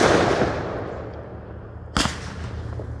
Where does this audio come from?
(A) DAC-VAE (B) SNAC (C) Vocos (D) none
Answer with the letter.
D